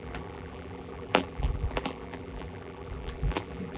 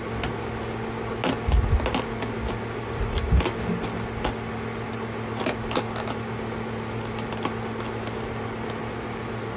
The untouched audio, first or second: second